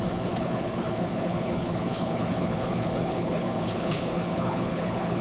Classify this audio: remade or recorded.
remade